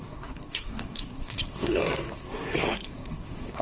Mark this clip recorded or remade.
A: remade